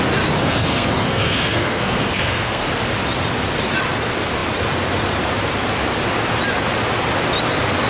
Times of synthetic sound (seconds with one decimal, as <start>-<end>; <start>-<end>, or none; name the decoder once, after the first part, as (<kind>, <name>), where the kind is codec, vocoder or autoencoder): 0.4-2.7 (codec, SNAC)